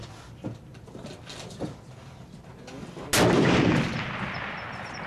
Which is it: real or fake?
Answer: real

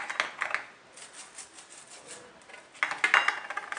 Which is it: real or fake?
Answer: real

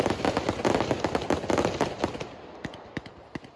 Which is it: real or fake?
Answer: real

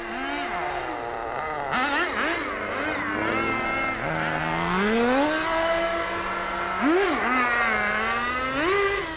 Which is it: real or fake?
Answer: real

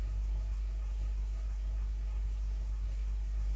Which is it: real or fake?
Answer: fake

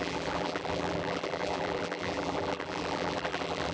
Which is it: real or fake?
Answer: fake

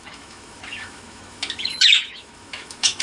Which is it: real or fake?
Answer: fake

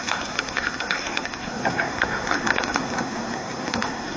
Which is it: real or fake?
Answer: fake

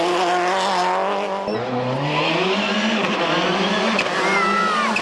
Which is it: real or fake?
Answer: real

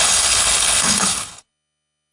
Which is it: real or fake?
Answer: fake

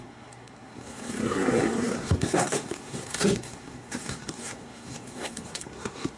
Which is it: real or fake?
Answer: fake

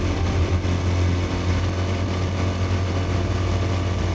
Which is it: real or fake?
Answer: real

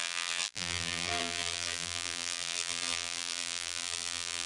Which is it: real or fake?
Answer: fake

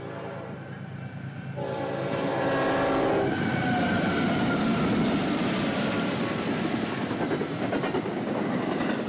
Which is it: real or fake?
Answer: real